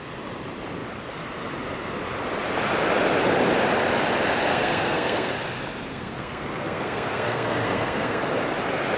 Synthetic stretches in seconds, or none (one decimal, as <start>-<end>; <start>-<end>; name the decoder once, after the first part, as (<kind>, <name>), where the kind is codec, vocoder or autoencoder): 4.5-5.3 (codec, SNAC); 5.9-8.2